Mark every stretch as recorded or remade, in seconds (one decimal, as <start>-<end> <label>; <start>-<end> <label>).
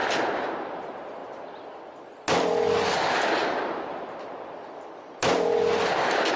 0.0-6.4 recorded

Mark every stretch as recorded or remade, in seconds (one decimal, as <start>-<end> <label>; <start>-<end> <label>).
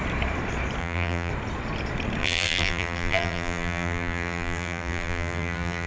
0.0-0.8 recorded; 0.8-1.3 remade; 1.3-2.2 recorded; 2.2-5.9 remade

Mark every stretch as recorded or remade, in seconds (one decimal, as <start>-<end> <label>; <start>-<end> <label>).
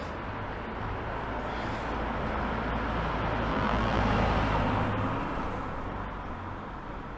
0.0-3.5 recorded; 3.5-4.0 remade; 4.0-7.2 recorded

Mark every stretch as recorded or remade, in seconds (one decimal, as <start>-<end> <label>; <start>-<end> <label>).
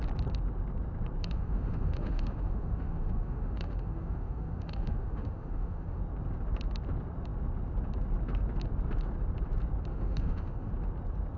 0.0-1.2 recorded; 1.2-6.0 remade; 6.0-9.9 recorded; 9.9-10.7 remade; 10.7-11.4 recorded